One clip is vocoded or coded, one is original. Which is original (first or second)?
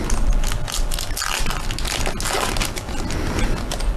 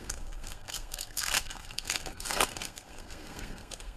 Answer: first